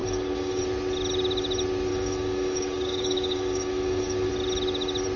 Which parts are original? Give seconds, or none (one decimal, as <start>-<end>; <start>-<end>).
0.6-1.9; 4.3-5.2